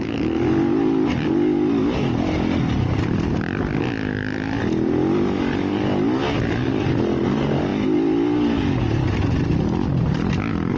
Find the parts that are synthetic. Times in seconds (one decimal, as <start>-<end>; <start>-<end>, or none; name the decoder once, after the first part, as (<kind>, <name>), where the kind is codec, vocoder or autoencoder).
none